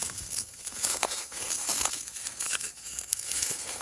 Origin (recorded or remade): remade